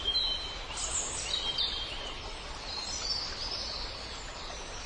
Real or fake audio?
real